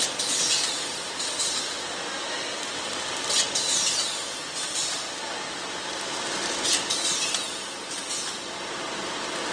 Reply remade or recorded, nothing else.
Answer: recorded